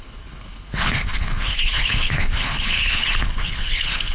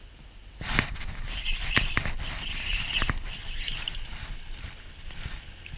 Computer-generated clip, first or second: first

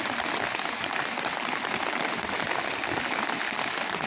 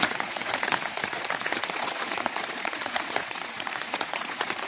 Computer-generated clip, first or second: second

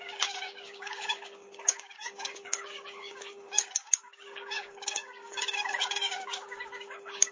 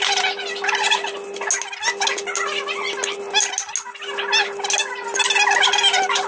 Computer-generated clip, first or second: first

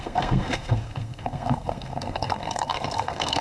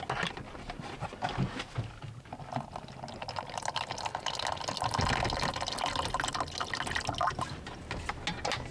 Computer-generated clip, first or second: first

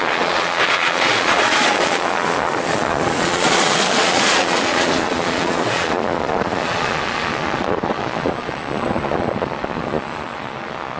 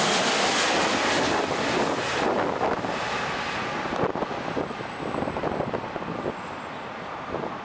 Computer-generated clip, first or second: first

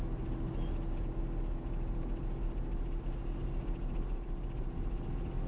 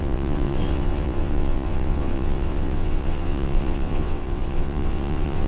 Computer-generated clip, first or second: second